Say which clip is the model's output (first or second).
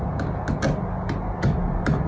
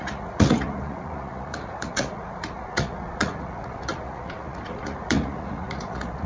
second